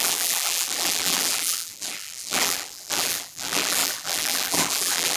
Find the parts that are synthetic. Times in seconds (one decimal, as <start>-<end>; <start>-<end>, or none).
0.0-5.2

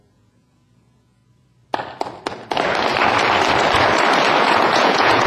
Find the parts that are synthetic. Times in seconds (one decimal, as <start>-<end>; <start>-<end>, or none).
0.0-1.2; 4.4-5.3

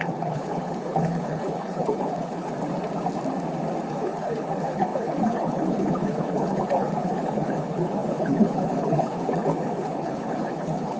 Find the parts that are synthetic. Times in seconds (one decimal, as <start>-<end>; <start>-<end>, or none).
0.0-2.5; 3.9-11.0

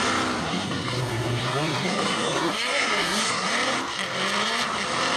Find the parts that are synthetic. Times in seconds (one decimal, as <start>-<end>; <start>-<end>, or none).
0.4-3.5

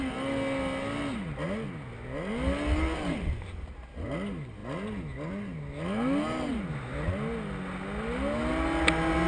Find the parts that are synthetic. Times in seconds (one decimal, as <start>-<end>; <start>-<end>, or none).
none

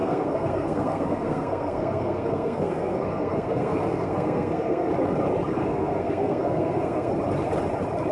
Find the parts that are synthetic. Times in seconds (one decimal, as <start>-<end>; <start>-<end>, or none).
0.0-4.9; 5.6-7.1

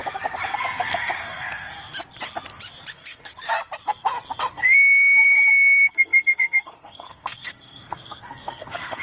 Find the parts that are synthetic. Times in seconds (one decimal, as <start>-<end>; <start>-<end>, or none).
0.5-1.7; 2.9-3.3; 4.5-9.0

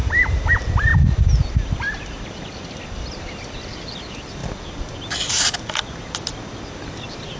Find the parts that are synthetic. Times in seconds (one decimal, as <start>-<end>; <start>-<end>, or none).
0.0-0.9; 3.1-4.4; 6.9-7.4